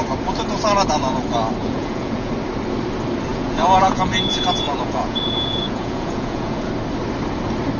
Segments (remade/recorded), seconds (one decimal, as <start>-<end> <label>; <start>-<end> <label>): 0.0-1.6 recorded; 1.6-2.3 remade; 2.3-3.3 recorded; 3.3-6.7 remade; 6.7-7.8 recorded